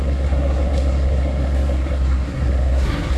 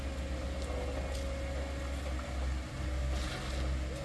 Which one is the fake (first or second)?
first